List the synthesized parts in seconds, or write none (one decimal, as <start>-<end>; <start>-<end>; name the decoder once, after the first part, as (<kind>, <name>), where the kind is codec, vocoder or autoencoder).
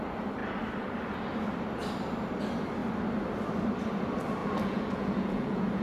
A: 4.4-5.8 (vocoder, Vocos)